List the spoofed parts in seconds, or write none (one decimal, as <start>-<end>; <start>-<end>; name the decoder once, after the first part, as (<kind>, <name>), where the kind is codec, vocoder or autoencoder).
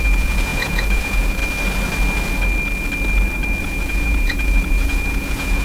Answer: 0.0-1.4 (vocoder, Vocos); 3.6-5.6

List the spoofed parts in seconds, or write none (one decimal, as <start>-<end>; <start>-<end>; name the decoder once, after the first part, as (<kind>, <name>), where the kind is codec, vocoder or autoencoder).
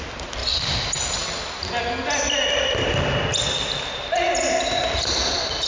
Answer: none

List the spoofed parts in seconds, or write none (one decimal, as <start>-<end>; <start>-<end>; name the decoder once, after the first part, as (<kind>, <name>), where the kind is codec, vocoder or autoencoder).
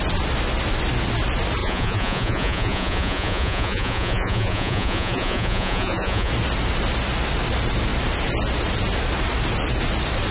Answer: 1.6-6.3 (vocoder, Vocos)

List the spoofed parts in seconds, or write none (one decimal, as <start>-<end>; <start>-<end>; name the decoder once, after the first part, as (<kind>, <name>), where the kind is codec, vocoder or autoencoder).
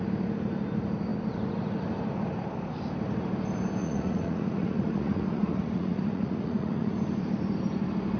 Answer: 3.8-6.9 (vocoder, Vocos)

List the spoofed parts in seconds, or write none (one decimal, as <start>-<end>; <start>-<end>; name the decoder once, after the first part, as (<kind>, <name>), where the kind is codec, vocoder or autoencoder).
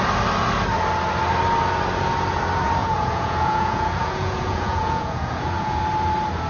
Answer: 2.8-5.8 (vocoder, Vocos)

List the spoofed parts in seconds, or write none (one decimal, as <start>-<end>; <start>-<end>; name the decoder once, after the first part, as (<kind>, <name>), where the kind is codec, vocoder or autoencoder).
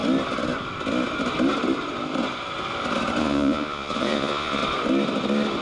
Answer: 3.2-4.6 (vocoder, Vocos)